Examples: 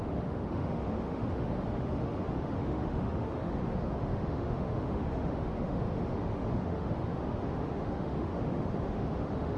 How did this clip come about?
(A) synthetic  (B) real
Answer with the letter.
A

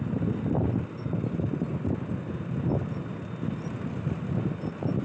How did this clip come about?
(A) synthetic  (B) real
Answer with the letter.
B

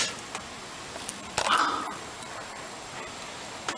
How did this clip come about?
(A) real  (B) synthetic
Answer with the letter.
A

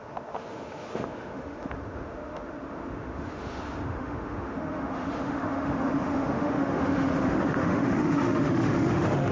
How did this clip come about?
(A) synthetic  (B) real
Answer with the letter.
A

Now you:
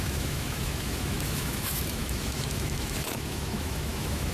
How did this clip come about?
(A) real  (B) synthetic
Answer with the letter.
B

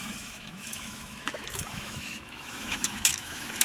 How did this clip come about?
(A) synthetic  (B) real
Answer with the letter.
A